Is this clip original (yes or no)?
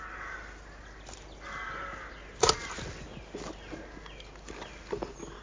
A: yes